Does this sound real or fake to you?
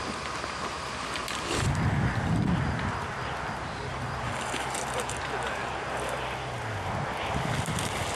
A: real